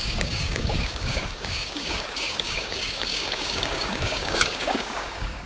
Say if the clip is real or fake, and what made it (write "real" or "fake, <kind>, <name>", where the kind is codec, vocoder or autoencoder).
fake, codec, DAC